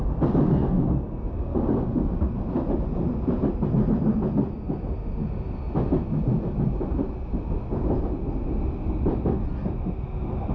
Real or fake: real